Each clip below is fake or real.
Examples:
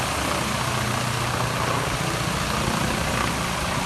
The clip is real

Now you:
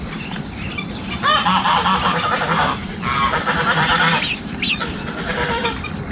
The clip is real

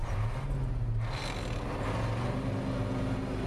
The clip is real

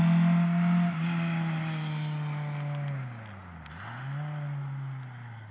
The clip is real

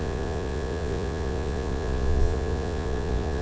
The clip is fake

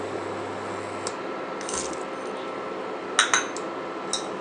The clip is real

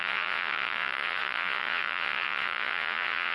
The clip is fake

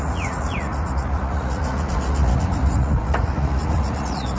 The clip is fake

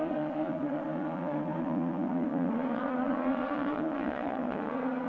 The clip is fake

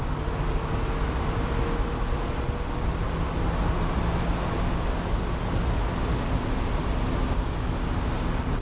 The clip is real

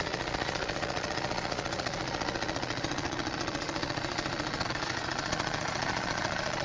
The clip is fake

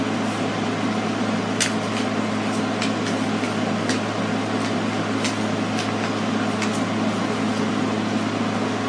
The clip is real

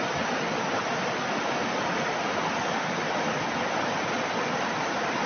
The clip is real